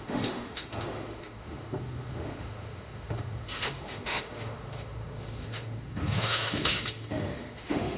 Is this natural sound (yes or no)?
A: no